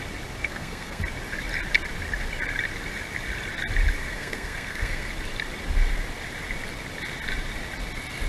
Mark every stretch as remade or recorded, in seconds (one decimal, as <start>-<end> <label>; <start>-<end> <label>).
0.0-0.4 recorded; 0.4-1.0 remade; 1.0-4.0 recorded; 4.0-5.1 remade; 5.1-8.3 recorded